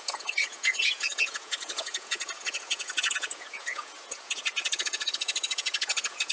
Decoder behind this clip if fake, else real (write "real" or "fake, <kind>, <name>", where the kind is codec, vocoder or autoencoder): fake, vocoder, Vocos